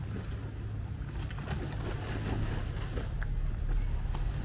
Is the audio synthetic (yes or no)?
no